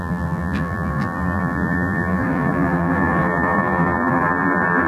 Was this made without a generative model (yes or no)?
no